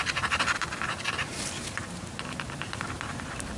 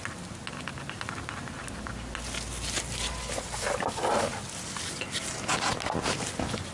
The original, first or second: second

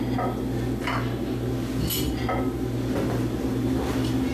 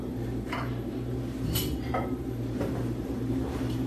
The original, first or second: first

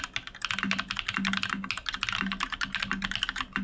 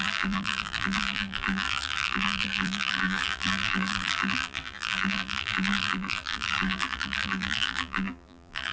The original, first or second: first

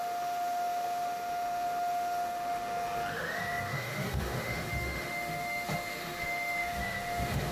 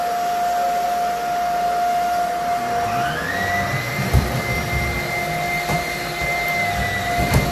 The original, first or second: second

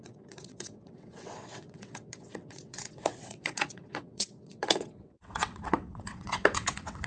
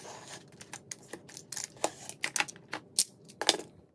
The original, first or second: second